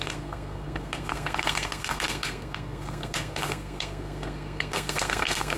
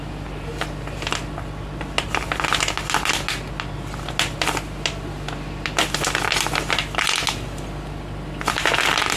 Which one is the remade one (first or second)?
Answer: first